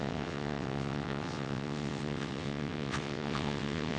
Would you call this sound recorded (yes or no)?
no